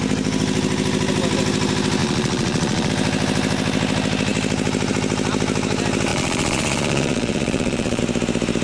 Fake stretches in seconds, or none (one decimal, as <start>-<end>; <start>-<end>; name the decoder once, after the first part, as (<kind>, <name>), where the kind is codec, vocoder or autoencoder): 2.0-2.9 (vocoder, Vocos); 6.1-8.0